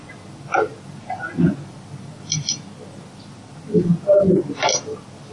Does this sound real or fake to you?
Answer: real